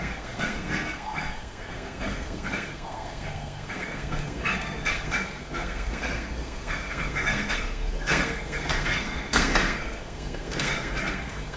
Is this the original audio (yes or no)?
no